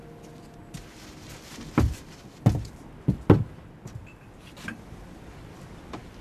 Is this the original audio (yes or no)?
yes